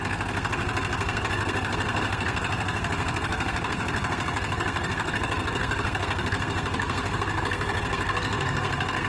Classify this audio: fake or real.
fake